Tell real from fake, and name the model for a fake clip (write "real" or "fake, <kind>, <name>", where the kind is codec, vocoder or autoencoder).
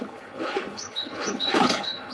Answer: fake, codec, HILCodec